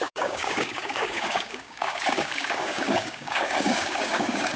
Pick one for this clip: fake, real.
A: fake